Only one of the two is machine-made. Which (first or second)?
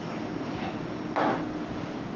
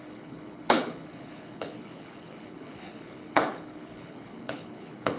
second